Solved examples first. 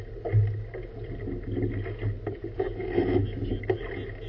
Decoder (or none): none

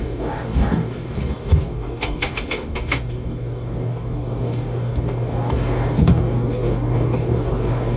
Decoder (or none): codec, DAC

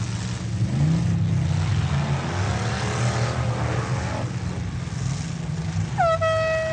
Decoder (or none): none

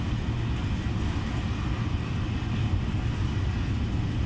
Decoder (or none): none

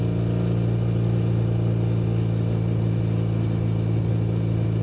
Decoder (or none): none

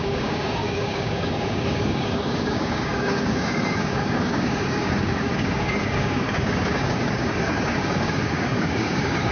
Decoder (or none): codec, DAC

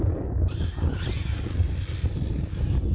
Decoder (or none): none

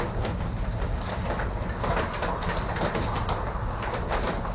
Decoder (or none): none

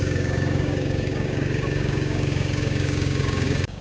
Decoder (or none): codec, DAC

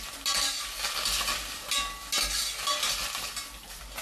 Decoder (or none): none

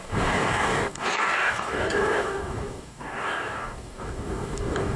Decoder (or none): codec, DAC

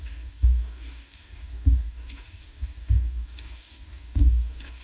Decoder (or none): codec, DAC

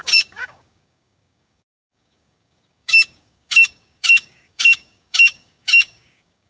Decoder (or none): codec, DAC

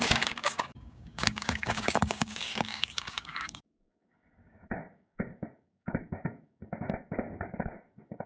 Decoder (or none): codec, DAC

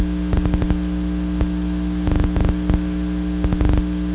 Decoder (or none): none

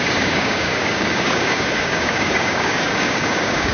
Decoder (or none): codec, DAC